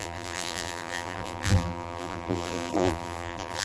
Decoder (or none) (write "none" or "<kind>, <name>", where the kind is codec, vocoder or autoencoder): vocoder, BigVGAN v2